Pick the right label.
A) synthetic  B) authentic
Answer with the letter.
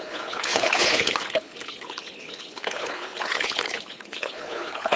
A